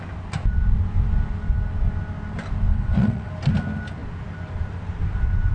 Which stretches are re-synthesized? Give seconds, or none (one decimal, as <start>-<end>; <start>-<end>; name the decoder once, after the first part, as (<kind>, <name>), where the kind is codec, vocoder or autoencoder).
2.7-3.3 (vocoder, WaveNeXt)